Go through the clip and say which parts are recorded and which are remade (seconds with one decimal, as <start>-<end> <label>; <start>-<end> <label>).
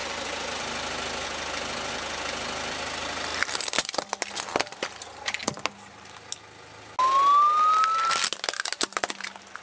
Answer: 0.0-9.6 recorded